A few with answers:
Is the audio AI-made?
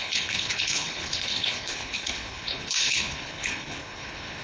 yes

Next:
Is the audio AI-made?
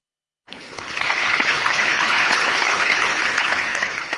yes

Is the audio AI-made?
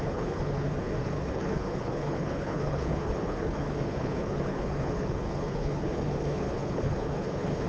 yes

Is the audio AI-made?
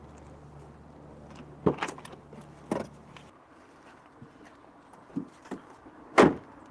no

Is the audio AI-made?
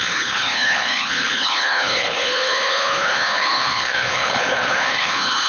yes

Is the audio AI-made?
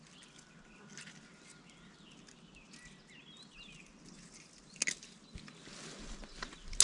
no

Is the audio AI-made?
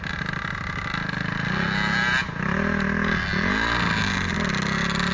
no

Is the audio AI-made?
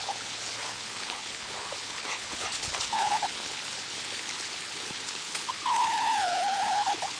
yes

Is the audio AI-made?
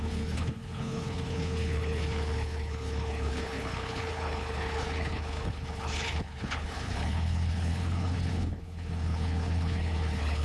yes